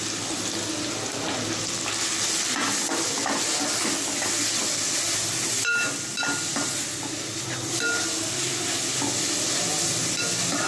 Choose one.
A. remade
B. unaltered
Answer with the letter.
B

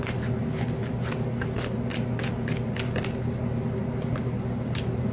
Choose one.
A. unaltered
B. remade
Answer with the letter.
A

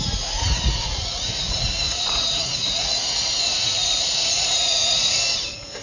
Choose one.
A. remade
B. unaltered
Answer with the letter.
A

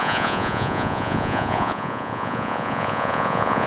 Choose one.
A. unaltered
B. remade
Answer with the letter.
B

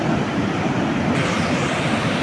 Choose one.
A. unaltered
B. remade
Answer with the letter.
A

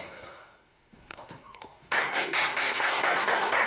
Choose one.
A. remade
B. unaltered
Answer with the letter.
A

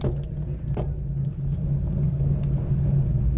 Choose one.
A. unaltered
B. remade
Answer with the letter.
A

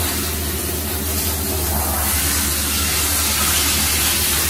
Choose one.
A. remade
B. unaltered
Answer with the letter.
B